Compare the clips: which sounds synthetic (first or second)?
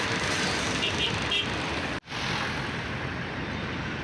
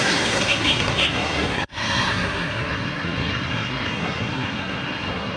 second